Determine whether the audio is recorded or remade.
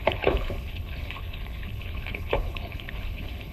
remade